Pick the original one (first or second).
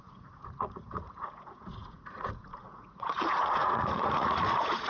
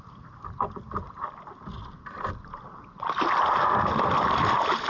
second